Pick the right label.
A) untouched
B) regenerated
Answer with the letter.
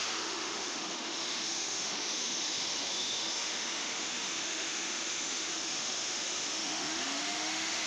B